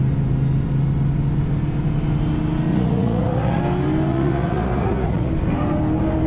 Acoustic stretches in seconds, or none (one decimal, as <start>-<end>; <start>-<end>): 0.0-2.7; 3.6-4.1; 5.3-6.3